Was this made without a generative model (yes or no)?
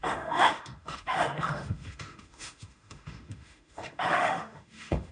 no